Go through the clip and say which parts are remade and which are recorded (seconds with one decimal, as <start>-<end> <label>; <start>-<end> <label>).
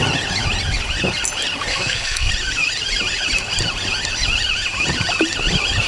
0.0-1.7 recorded; 1.7-2.3 remade; 2.3-5.9 recorded